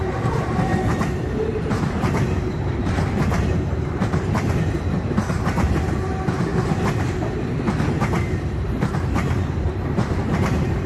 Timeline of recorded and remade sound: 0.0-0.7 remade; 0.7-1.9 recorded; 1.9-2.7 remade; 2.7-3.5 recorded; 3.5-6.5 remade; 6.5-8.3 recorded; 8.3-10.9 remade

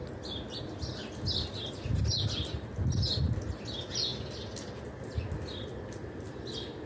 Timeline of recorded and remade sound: 0.0-6.9 recorded